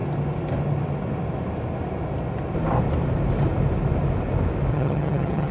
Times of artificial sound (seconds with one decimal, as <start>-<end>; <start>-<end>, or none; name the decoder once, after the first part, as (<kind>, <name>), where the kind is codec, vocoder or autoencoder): 4.7-5.5 (vocoder, HiFi-GAN)